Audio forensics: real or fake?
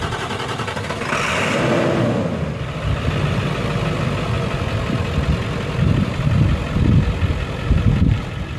real